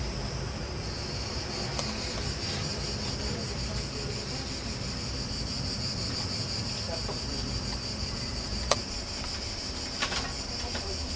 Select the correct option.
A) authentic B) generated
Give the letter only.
B